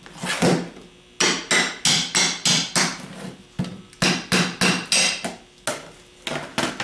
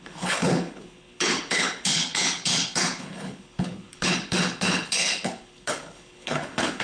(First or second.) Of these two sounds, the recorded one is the first